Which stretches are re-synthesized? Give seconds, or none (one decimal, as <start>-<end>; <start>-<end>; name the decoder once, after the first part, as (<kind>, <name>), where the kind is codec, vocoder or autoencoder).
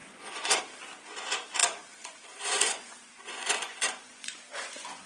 0.0-0.6 (vocoder, Vocos); 1.6-5.1